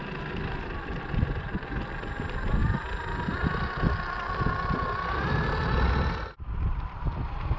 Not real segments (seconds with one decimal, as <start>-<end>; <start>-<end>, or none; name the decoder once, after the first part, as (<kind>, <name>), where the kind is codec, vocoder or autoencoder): none